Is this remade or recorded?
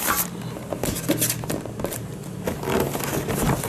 recorded